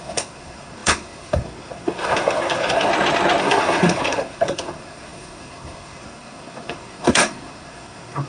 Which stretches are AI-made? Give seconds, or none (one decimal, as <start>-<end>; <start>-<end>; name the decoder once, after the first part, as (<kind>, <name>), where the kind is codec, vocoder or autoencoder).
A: 0.0-2.9 (codec, SNAC); 3.4-8.3